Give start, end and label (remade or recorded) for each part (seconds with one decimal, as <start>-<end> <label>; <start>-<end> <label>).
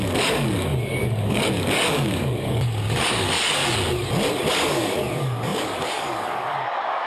0.0-3.6 remade; 3.6-4.5 recorded; 4.5-7.1 remade